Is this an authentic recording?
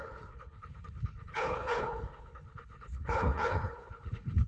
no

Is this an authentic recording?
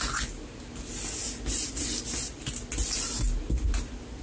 yes